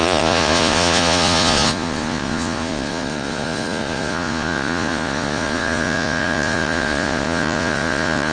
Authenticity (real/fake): fake